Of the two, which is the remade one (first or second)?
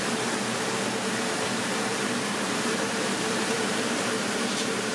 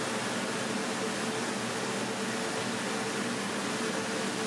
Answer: first